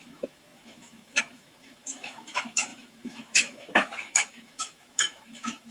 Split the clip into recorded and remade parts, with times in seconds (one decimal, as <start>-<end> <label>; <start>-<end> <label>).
0.0-5.7 remade